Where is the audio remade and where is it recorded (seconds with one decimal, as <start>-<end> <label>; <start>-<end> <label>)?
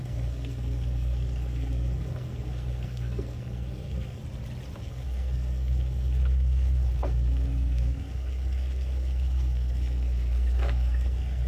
0.0-4.2 remade; 4.2-4.8 recorded; 4.8-11.5 remade